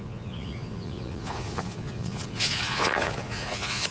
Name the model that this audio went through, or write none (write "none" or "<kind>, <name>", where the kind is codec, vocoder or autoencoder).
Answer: vocoder, Vocos